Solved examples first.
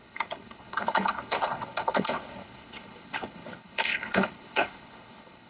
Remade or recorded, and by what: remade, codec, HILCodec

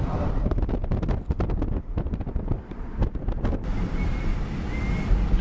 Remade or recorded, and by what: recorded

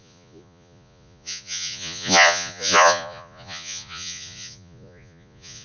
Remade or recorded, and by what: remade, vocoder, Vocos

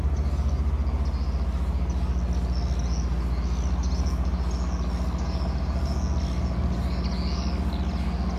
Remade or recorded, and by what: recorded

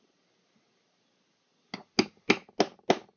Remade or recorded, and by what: recorded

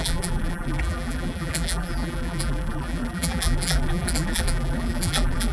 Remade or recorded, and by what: remade, vocoder, BigVGAN v2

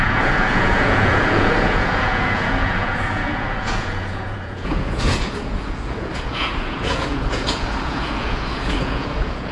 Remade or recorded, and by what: remade, vocoder, Vocos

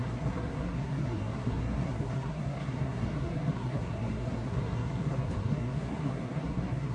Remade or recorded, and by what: remade, codec, SNAC